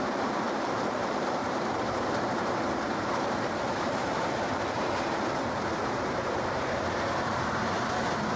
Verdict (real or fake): fake